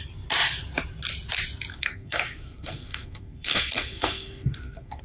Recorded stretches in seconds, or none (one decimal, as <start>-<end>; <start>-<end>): 0.0-1.7